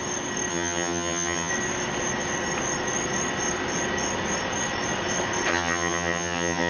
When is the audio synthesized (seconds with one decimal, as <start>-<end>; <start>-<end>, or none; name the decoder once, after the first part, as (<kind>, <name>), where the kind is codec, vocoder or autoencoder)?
0.5-1.5 (vocoder, HiFi-GAN); 5.5-6.7